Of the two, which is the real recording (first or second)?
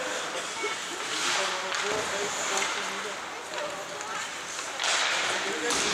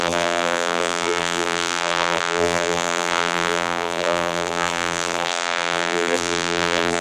first